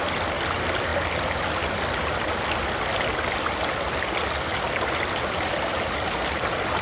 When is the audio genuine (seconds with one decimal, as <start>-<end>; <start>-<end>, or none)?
0.0-6.8